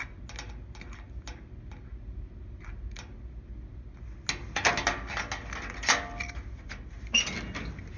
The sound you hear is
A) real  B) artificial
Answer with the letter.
A